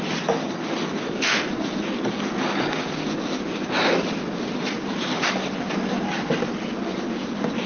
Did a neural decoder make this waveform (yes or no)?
no